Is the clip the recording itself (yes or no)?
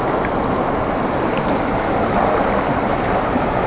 yes